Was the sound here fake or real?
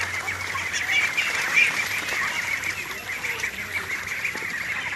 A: real